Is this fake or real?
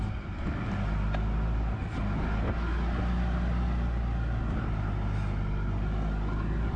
real